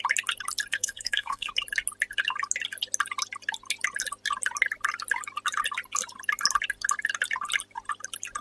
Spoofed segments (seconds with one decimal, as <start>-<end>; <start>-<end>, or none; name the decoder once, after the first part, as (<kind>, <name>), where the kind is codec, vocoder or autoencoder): 0.7-1.5 (codec, SNAC)